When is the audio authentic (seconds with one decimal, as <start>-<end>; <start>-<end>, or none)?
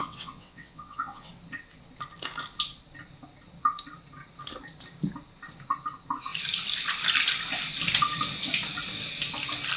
1.3-9.8